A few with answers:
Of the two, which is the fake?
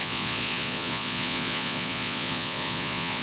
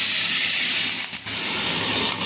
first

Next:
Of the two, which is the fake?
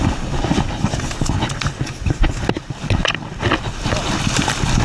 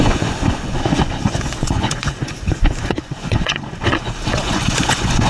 second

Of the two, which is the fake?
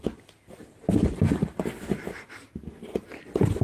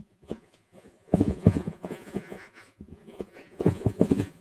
second